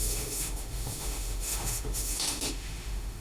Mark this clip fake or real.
fake